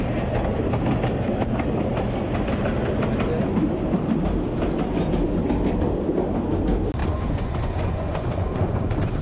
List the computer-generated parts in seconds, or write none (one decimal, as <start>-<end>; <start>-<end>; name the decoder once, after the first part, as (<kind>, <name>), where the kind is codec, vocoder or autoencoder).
7.0-9.2 (vocoder, Vocos)